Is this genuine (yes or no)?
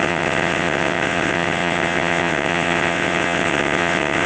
no